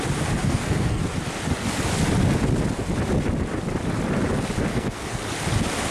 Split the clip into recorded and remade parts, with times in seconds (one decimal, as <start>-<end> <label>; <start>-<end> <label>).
0.0-0.4 recorded; 0.4-1.0 remade; 1.0-4.7 recorded; 4.7-5.2 remade; 5.2-5.9 recorded